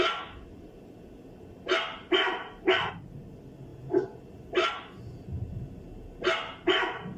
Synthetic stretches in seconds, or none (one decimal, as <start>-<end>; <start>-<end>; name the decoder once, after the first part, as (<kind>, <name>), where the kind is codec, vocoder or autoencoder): 2.3-3.2 (vocoder, BigVGAN v2)